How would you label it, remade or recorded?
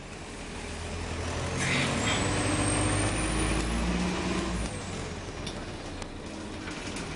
recorded